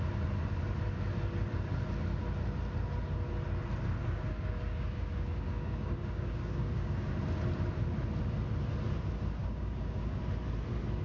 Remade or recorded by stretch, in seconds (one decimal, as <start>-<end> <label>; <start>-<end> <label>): 0.0-4.0 recorded; 4.0-7.1 remade; 7.1-9.4 recorded; 9.4-10.2 remade; 10.2-11.0 recorded